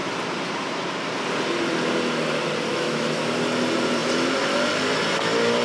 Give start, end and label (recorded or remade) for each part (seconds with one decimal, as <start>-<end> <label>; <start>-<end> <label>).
0.0-2.7 recorded; 2.7-3.2 remade; 3.2-5.6 recorded